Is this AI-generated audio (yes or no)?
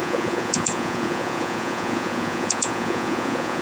yes